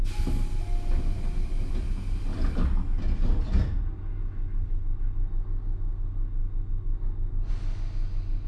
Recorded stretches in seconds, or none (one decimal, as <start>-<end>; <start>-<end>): 0.0-8.5